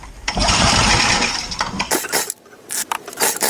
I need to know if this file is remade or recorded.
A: remade